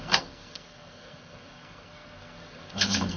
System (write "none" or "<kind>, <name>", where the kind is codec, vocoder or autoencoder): codec, SNAC